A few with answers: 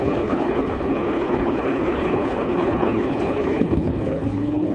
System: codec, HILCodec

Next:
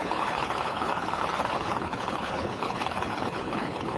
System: codec, HILCodec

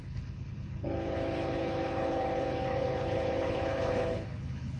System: codec, HILCodec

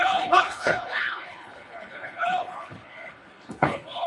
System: codec, HILCodec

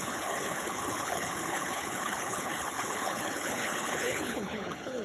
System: codec, HILCodec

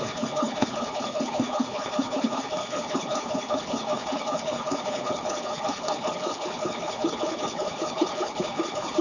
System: codec, HILCodec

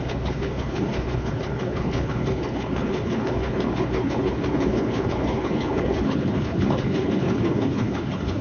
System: codec, HILCodec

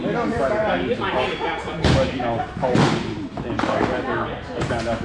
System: none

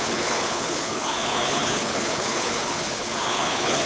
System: codec, HILCodec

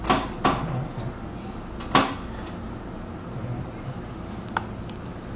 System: none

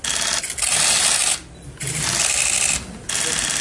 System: none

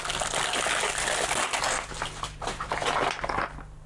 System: none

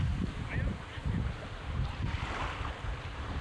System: none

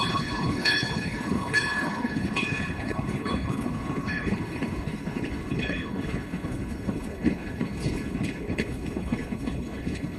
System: codec, HILCodec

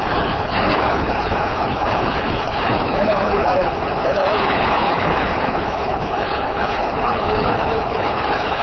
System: codec, HILCodec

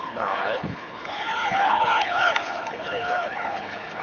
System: codec, HILCodec